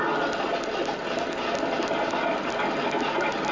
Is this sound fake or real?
real